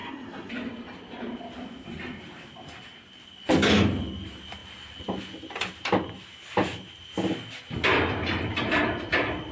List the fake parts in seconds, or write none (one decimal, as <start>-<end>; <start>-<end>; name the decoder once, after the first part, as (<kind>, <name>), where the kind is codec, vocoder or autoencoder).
0.0-0.5 (codec, SNAC)